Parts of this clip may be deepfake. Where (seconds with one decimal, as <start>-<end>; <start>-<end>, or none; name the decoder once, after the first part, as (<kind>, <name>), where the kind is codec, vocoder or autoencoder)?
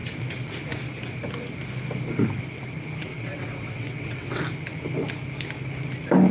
3.1-4.4 (vocoder, WaveNeXt)